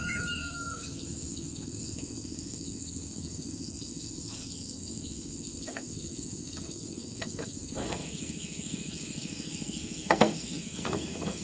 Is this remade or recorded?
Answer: remade